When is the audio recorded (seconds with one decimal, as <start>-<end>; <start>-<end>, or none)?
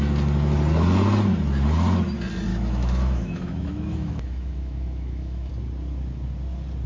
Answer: 0.0-2.5; 5.5-6.9